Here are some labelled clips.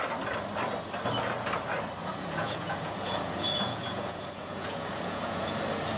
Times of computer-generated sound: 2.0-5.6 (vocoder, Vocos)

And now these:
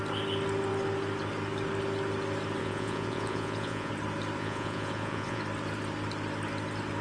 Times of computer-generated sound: 2.6-3.9 (vocoder, Vocos); 4.4-5.4

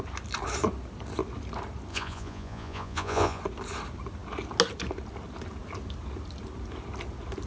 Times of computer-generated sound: 1.9-3.4 (vocoder, Vocos)

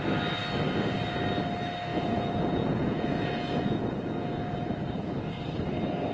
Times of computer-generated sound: 1.9-5.1 (vocoder, Vocos)

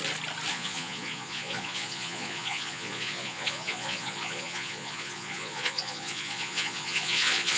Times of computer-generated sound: 0.5-7.6 (vocoder, Vocos)

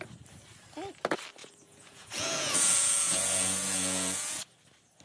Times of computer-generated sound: 1.4-4.4 (vocoder, Vocos)

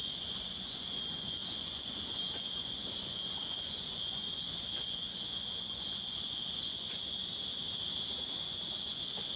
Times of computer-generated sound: 0.0-7.2 (vocoder, Vocos); 8.3-9.4